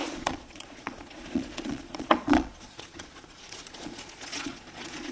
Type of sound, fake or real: fake